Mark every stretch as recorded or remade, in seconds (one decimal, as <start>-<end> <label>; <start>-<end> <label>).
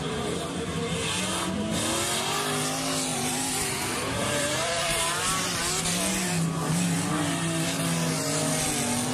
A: 0.0-3.1 recorded; 3.1-5.6 remade; 5.6-9.1 recorded